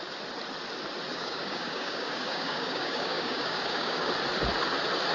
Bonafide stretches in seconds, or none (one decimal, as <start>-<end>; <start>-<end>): 0.0-1.1; 4.1-5.1

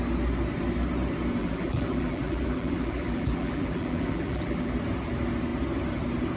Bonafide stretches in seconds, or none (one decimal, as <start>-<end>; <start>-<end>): 0.0-1.4; 4.7-6.4

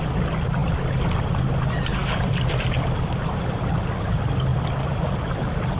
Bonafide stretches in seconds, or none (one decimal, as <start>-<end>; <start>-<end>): 0.0-0.6; 1.4-2.0; 3.2-4.5

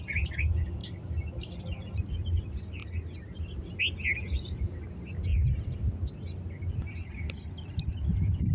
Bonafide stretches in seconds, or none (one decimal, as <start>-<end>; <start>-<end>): 0.0-8.5

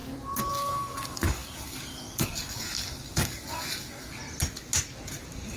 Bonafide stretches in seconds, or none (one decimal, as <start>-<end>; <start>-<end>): 0.0-0.5; 4.2-5.6

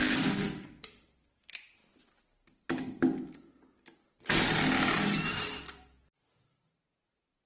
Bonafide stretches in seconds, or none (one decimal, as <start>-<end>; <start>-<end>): 1.8-6.2